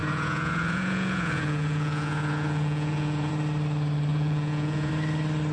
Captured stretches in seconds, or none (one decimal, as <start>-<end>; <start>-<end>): 3.3-4.1; 4.9-5.5